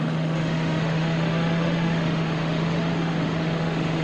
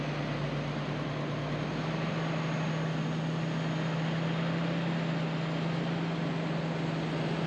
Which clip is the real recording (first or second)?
second